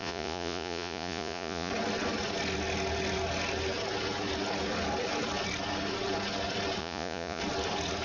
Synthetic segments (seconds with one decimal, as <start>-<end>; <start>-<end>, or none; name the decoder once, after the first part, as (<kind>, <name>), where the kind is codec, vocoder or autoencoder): 0.0-1.7 (vocoder, Vocos); 6.8-7.4